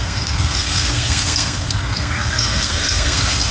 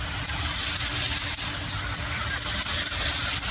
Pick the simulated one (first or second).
first